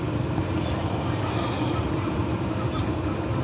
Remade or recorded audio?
remade